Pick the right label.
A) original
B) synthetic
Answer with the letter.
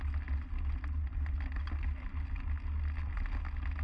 A